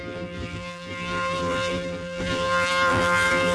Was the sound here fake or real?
fake